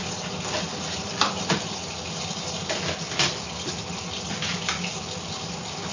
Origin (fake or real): real